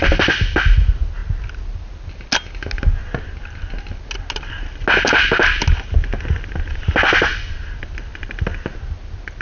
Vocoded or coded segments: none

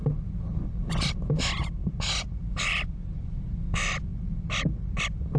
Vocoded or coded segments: 1.8-3.4 (vocoder, BigVGAN v2)

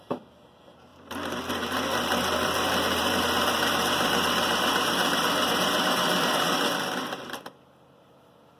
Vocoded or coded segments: 0.0-8.6 (vocoder, BigVGAN v2)

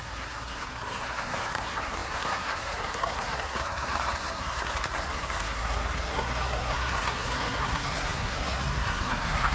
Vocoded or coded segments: 0.0-9.5 (codec, SNAC)

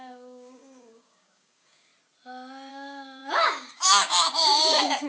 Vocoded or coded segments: 0.0-1.9 (codec, DAC); 2.7-5.1